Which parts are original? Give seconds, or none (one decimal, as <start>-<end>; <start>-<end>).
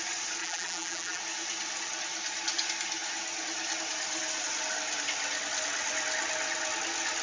0.0-0.4; 1.2-7.2